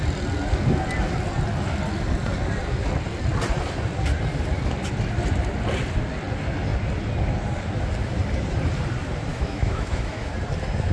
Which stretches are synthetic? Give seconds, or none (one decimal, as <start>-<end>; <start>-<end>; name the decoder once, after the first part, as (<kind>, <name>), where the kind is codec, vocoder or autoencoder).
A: 9.3-10.3 (autoencoder, DAC-VAE)